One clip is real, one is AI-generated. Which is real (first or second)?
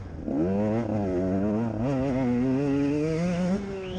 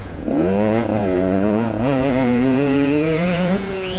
first